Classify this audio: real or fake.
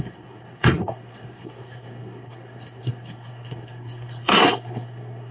fake